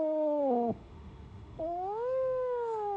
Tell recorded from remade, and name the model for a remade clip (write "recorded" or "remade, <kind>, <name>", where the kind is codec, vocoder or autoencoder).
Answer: remade, autoencoder, DAC-VAE